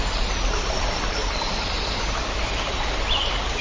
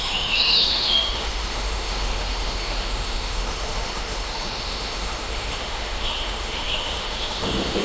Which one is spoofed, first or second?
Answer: second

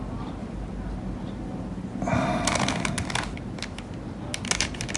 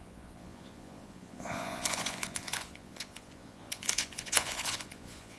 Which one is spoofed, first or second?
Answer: second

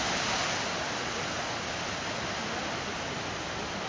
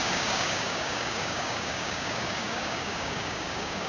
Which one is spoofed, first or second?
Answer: second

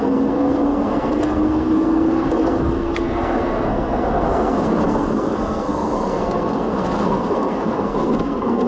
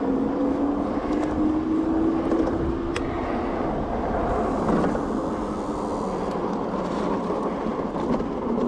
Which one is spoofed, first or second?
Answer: first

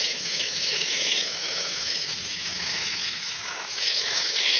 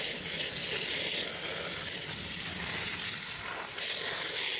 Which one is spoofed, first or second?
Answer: first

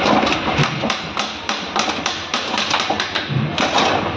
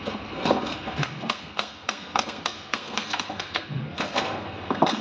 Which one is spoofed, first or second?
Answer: second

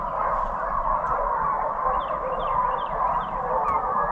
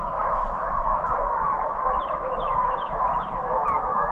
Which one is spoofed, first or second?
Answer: second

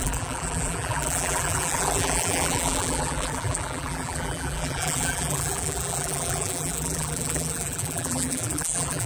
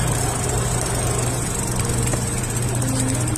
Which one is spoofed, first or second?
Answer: first